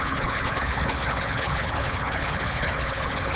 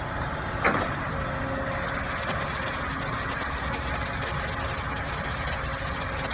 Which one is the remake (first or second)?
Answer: first